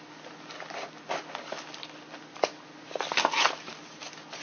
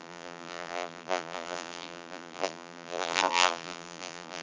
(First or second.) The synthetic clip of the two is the second